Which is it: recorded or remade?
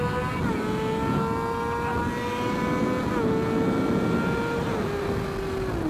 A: recorded